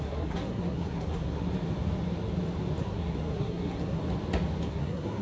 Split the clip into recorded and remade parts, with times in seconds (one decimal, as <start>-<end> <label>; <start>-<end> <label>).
0.0-1.5 remade; 1.5-2.8 recorded; 2.8-4.0 remade; 4.0-4.6 recorded; 4.6-5.2 remade